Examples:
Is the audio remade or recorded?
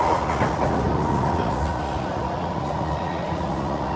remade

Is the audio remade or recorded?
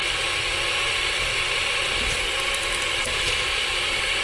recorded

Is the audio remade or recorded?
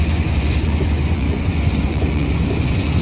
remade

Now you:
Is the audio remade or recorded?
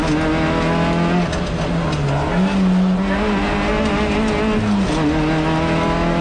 recorded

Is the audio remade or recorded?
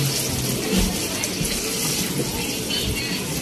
recorded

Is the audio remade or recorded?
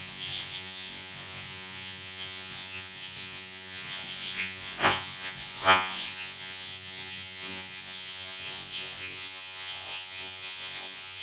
remade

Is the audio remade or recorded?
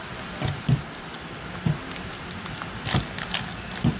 recorded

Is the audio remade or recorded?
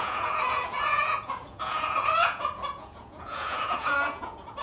remade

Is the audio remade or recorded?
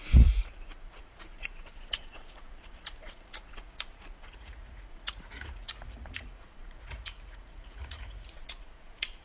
remade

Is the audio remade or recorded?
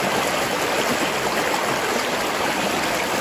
recorded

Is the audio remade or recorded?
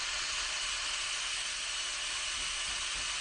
recorded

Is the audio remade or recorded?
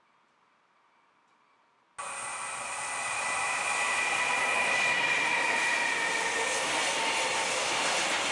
recorded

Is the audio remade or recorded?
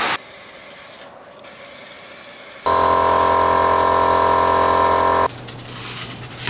recorded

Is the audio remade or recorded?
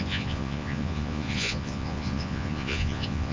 remade